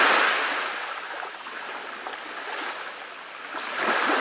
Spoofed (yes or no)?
no